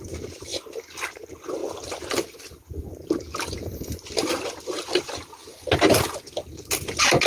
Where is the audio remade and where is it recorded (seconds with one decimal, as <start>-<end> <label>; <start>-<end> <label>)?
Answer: 0.0-7.3 recorded